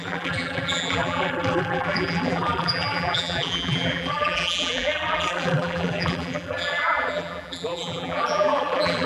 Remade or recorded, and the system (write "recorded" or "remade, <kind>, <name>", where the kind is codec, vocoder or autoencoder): remade, vocoder, BigVGAN v2